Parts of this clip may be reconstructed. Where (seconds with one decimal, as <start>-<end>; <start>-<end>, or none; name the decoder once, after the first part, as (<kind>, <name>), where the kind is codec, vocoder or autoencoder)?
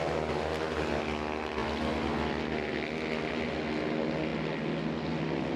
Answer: none